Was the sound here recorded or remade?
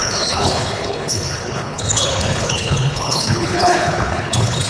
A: remade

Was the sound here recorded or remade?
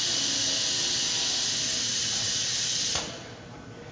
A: recorded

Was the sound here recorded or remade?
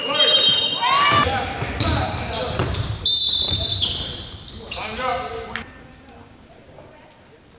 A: recorded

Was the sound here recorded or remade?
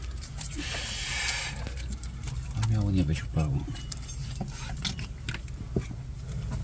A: recorded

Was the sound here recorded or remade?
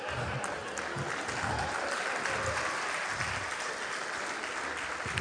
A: recorded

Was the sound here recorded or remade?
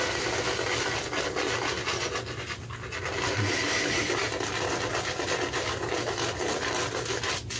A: recorded